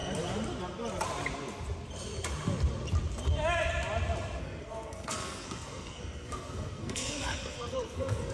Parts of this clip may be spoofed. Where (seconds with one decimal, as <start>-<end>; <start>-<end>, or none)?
4.4-8.3